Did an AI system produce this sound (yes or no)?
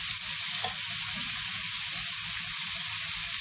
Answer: no